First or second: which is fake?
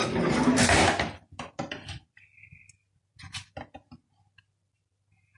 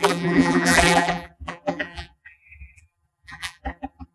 second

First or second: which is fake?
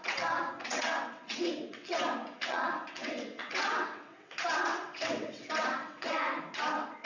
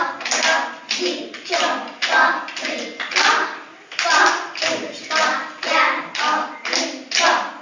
first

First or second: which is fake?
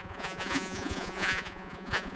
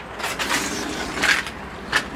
first